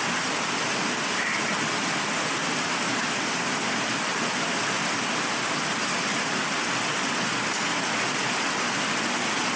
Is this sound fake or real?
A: real